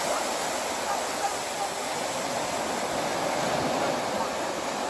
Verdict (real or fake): real